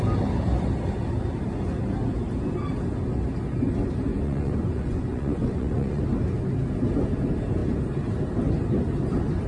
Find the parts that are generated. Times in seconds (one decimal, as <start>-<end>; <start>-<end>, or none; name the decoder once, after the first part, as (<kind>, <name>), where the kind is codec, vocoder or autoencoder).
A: 4.1-6.0 (vocoder, Vocos)